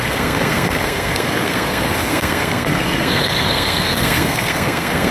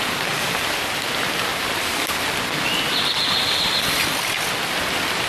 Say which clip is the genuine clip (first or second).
second